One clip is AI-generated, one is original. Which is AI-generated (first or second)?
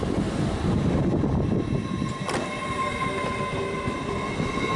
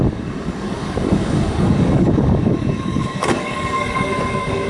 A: second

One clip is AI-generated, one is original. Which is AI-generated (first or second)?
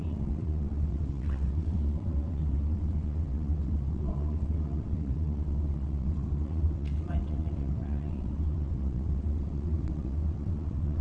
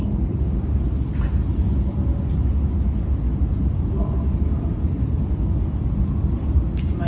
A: first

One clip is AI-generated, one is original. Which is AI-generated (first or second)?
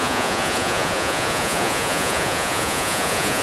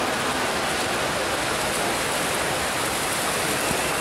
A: first